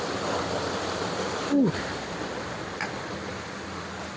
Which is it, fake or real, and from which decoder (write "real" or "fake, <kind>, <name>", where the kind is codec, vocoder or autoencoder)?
real